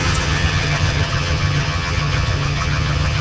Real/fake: fake